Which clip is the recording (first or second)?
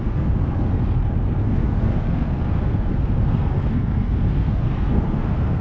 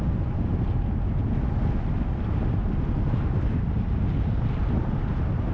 second